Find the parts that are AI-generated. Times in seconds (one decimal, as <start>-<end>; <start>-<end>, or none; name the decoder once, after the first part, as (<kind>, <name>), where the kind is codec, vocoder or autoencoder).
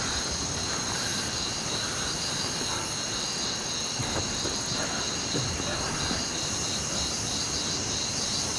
1.1-2.5 (vocoder, BigVGAN v2)